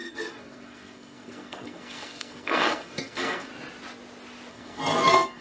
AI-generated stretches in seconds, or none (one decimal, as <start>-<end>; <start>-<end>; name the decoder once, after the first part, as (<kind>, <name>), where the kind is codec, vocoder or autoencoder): 0.0-3.5 (codec, SNAC); 4.5-5.4